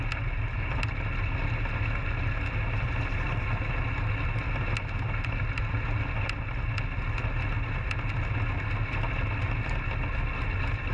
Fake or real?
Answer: real